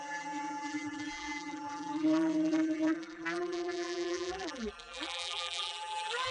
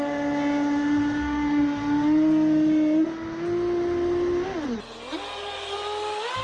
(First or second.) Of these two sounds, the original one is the second